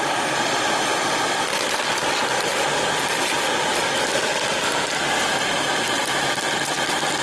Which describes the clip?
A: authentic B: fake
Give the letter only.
A